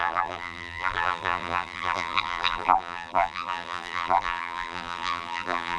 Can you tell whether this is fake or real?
fake